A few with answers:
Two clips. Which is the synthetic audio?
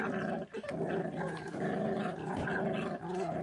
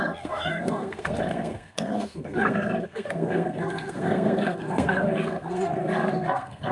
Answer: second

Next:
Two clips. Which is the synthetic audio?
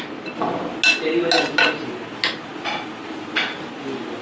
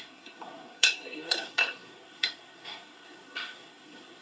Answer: second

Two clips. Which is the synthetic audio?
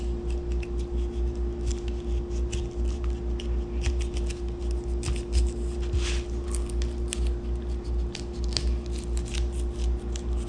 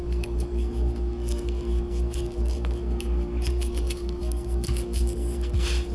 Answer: second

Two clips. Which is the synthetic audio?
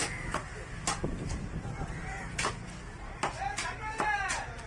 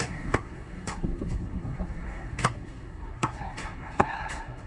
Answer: second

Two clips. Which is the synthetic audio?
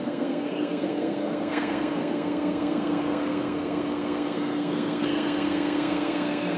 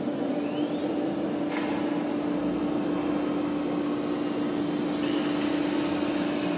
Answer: first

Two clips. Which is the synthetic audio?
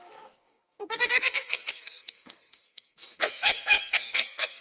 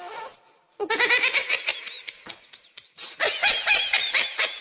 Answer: first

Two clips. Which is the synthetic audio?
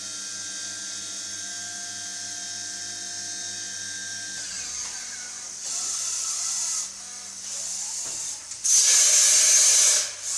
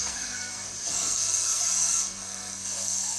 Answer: second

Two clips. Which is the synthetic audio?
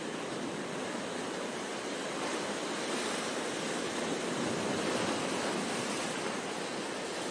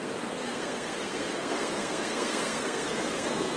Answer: second